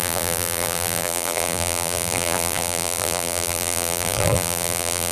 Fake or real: fake